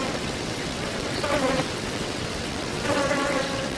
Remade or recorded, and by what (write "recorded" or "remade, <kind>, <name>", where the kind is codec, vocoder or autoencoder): remade, vocoder, WaveNeXt